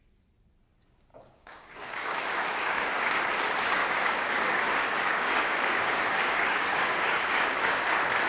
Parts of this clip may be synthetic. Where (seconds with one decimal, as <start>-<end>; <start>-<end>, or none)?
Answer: 1.1-3.2; 3.8-7.8